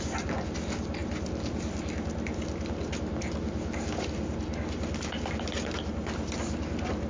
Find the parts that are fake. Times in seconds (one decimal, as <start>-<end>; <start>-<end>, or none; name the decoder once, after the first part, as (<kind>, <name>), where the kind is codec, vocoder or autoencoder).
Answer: none